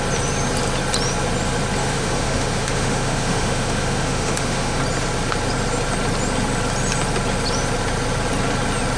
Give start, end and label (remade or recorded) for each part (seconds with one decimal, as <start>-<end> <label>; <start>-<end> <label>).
0.0-1.8 recorded; 1.8-4.8 remade; 4.8-9.0 recorded